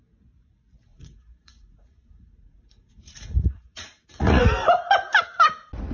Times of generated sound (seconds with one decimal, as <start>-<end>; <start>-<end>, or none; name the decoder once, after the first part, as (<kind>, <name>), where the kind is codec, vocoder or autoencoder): 0.9-4.4 (vocoder, Vocos)